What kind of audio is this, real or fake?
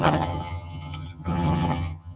fake